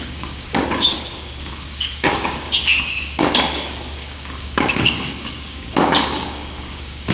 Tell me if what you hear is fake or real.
fake